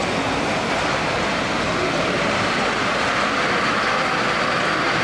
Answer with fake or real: real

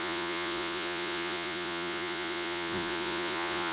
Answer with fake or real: fake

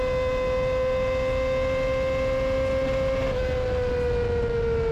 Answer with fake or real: real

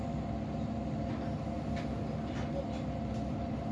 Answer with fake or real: real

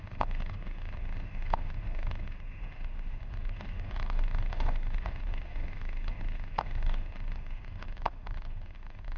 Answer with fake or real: fake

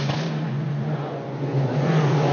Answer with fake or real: fake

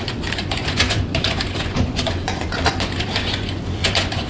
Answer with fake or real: fake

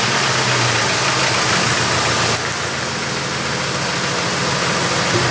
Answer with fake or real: real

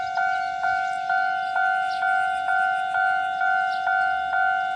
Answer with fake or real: real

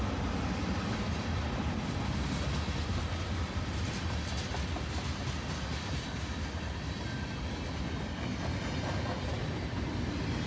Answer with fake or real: real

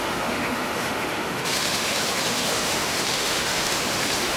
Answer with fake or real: fake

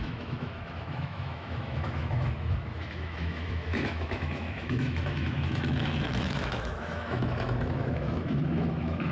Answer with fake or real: fake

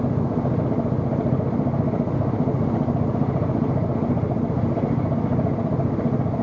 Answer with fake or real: real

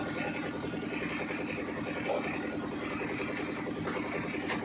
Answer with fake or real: real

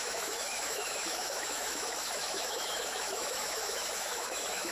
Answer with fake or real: fake